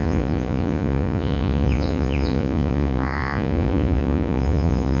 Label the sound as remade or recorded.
remade